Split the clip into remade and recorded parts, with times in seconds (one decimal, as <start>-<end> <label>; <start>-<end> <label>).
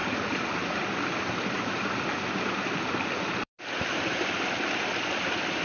0.0-3.4 recorded; 3.4-5.6 remade